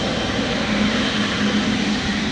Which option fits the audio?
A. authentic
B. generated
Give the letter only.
A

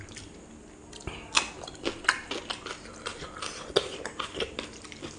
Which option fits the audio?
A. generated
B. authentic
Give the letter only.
B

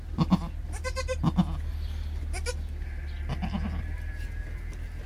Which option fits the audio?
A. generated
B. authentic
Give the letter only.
B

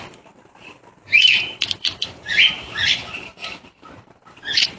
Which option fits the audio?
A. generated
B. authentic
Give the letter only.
A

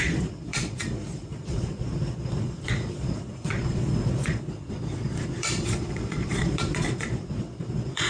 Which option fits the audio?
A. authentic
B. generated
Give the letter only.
B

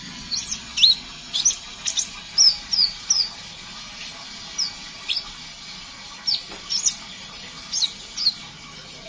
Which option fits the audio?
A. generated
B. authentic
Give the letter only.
B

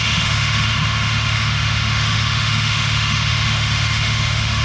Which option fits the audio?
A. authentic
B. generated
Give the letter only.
B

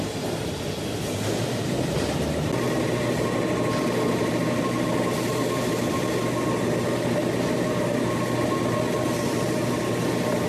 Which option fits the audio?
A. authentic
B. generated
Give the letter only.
A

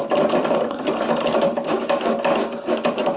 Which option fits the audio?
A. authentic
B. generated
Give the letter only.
A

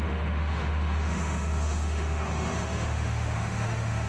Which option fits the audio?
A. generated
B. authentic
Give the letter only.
A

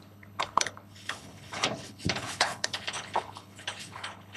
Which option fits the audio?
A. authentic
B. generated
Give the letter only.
B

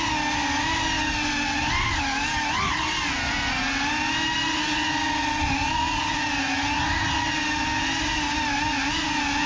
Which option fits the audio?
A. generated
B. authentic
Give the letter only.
B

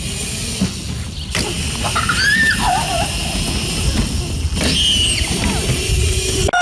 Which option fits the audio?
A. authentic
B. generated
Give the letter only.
A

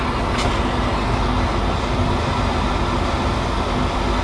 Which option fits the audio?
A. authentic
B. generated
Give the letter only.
A